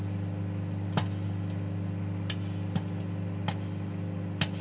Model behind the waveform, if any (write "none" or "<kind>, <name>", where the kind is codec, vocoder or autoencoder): none